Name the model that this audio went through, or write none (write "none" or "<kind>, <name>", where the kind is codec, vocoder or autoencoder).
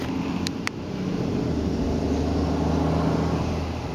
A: none